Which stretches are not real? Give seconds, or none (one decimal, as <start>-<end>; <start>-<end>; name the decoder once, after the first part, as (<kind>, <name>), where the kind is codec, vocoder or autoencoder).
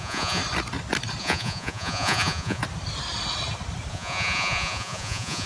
0.0-0.4 (vocoder, Vocos); 1.2-2.6; 3.9-5.5